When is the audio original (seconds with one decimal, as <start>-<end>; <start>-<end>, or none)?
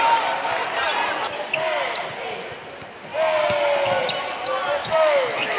0.0-4.8